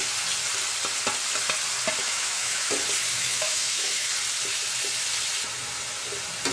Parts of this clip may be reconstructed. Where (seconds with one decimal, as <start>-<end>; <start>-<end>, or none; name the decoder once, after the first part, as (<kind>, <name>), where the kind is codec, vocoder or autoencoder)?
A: 2.0-2.7 (autoencoder, DAC-VAE); 3.1-4.1